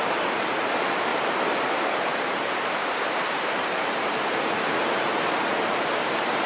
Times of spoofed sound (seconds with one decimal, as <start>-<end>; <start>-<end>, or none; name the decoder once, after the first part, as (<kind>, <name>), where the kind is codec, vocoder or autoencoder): 0.0-6.5 (vocoder, BigVGAN v2)